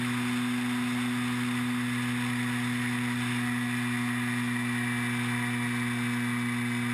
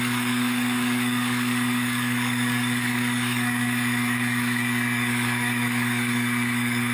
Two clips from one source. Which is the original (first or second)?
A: first